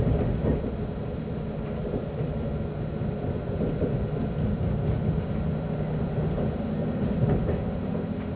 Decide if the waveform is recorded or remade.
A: recorded